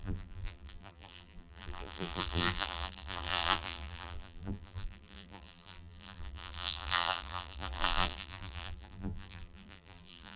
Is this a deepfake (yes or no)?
yes